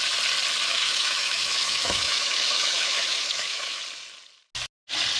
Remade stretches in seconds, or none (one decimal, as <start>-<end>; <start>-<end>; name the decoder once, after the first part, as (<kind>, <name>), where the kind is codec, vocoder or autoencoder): 0.7-3.8 (autoencoder, DAC-VAE)